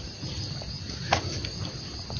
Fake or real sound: real